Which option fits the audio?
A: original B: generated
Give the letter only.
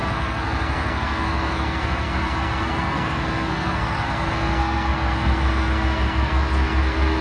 B